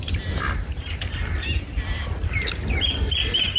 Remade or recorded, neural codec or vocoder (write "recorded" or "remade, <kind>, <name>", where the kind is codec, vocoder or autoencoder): recorded